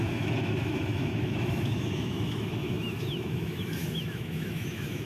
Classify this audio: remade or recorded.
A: remade